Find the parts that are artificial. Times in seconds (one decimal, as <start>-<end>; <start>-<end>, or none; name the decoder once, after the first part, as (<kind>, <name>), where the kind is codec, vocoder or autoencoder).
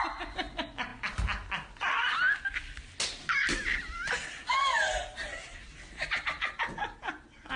3.4-4.4 (vocoder, BigVGAN v2)